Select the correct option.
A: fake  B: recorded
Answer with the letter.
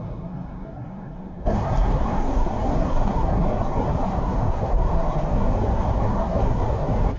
A